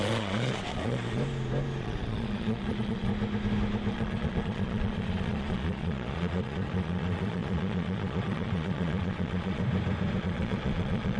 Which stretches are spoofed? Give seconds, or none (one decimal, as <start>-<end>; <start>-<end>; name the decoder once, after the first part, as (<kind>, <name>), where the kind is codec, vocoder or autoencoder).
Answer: 0.0-1.2 (vocoder, Vocos); 1.8-3.1; 3.9-9.6; 10.2-11.2